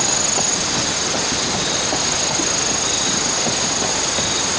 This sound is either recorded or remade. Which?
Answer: recorded